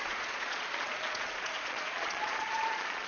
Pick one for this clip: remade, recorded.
remade